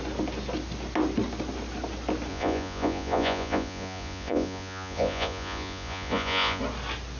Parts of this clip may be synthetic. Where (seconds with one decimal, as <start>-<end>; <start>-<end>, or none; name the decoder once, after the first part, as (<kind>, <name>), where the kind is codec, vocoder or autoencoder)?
2.3-6.6 (vocoder, Vocos)